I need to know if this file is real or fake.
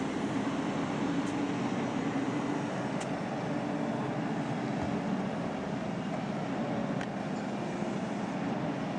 real